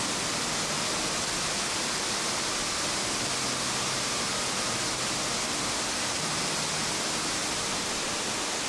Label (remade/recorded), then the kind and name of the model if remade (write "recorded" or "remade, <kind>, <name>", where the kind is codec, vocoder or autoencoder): recorded